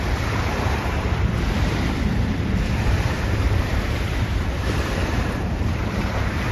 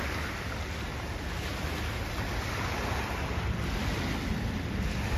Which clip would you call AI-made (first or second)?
first